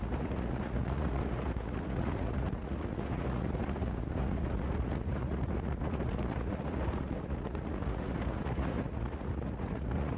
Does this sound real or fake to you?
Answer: fake